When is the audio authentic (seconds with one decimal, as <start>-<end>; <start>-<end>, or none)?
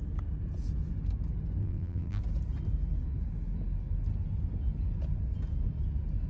0.0-1.6; 2.2-6.3